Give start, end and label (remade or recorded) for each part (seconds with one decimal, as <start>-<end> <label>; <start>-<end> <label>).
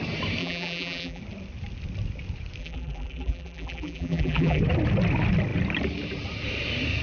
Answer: 0.0-0.4 recorded; 0.4-1.2 remade; 1.2-2.6 recorded; 2.6-4.6 remade; 4.6-7.0 recorded